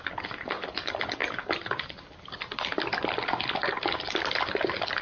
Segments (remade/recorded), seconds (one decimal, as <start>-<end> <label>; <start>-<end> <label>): 0.0-5.0 recorded